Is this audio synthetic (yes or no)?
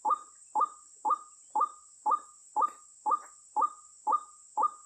no